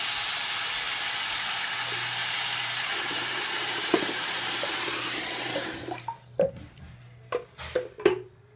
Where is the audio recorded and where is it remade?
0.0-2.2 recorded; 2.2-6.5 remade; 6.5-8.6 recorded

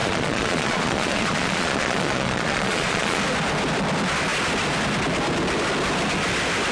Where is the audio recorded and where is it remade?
0.0-3.2 remade; 3.2-6.7 recorded

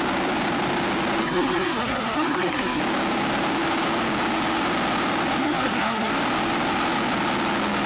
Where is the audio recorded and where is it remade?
0.0-1.2 recorded; 1.2-2.8 remade; 2.8-5.4 recorded; 5.4-6.1 remade; 6.1-7.9 recorded

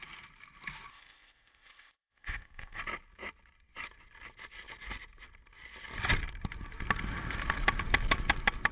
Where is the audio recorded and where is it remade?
0.0-0.9 recorded; 0.9-2.8 remade; 2.8-8.7 recorded

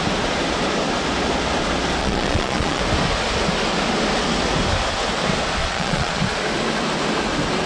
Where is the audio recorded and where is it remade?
0.0-2.0 recorded; 2.0-2.8 remade; 2.8-5.6 recorded; 5.6-6.2 remade; 6.2-7.7 recorded

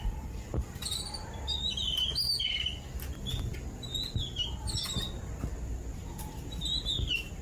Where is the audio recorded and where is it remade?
0.0-7.4 recorded

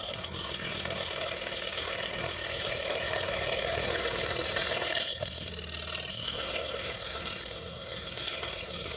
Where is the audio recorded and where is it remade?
0.0-5.5 remade; 5.5-6.1 recorded; 6.1-9.0 remade

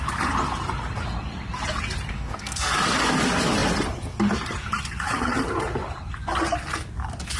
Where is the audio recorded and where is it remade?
0.0-2.1 recorded; 2.1-2.7 remade; 2.7-7.4 recorded